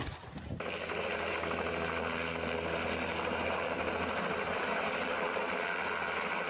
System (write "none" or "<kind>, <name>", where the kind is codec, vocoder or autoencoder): none